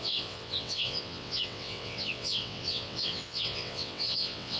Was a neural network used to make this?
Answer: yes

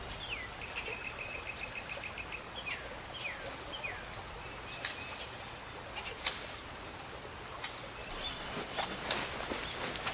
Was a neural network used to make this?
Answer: no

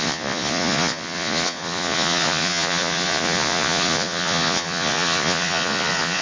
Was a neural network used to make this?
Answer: yes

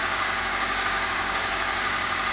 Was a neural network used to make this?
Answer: yes